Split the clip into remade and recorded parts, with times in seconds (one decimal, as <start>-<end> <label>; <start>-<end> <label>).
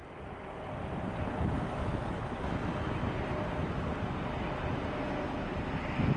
0.0-6.2 recorded